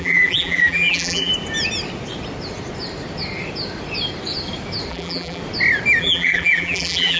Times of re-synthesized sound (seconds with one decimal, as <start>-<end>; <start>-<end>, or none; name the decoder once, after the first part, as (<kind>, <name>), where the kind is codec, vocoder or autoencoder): 0.0-1.3 (vocoder, BigVGAN v2); 4.9-5.4; 6.0-7.2